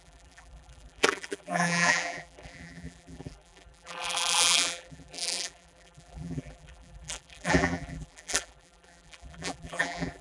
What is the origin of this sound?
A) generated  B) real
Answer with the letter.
A